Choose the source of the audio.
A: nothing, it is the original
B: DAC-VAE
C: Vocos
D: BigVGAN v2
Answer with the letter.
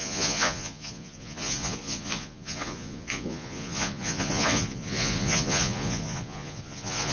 C